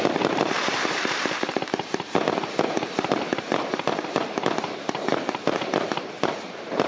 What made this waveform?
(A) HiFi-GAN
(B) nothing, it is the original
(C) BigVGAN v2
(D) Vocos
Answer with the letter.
C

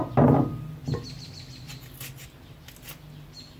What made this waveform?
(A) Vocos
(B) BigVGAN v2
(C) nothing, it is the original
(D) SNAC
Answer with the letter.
C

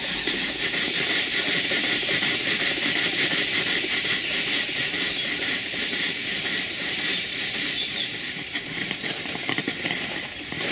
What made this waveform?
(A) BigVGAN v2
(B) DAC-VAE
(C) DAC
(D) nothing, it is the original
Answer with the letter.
A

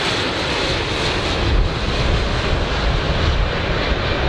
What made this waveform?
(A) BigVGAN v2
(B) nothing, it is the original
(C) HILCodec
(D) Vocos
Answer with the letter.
B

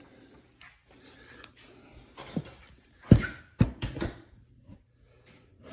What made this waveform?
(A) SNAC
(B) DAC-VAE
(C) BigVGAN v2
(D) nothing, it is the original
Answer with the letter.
D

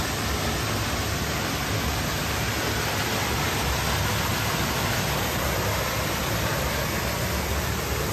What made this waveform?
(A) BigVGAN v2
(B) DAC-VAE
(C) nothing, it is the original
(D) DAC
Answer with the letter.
C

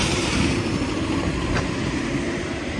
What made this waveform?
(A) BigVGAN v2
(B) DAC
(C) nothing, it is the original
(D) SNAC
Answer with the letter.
A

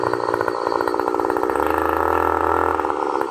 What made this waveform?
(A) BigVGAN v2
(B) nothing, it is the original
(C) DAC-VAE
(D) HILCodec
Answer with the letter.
B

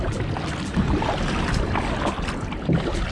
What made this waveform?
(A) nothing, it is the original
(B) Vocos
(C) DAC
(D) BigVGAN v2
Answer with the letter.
A